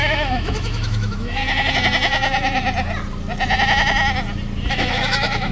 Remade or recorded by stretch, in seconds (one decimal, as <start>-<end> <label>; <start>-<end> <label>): 0.0-1.4 remade; 1.4-4.7 recorded; 4.7-5.5 remade